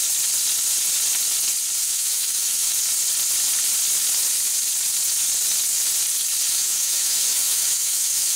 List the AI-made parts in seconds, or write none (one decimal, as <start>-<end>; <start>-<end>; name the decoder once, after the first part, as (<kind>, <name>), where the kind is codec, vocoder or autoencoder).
1.8-2.7 (autoencoder, DAC-VAE); 6.5-8.4